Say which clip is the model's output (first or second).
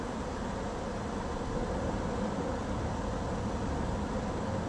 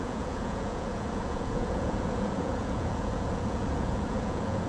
second